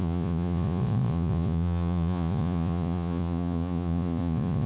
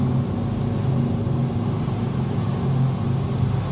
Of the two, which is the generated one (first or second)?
first